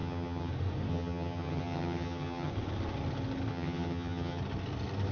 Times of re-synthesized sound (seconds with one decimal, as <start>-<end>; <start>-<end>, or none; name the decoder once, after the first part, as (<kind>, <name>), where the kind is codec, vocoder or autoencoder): 0.0-0.5 (vocoder, HiFi-GAN); 0.9-2.5; 3.5-4.4